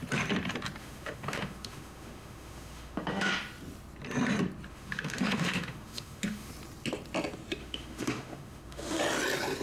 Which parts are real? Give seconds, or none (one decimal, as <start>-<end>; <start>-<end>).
0.0-0.8; 3.3-4.7; 6.5-7.6; 9.0-9.6